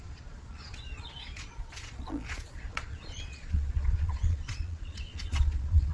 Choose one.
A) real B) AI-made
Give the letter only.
B